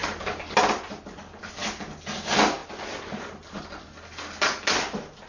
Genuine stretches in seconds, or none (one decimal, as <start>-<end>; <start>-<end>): 0.0-5.3